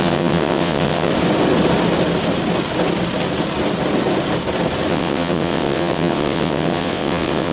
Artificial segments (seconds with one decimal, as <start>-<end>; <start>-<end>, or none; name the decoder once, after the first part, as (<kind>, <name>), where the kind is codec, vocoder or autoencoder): 0.0-1.1 (vocoder, WaveNeXt); 4.9-7.5